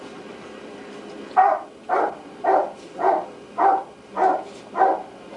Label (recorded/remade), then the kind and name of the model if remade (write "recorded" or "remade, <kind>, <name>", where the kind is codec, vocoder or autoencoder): remade, vocoder, BigVGAN v2